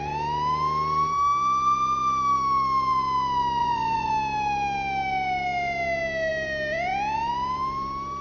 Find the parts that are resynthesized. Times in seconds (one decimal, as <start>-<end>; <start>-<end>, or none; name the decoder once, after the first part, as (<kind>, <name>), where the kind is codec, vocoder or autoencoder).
3.6-4.1 (vocoder, Vocos)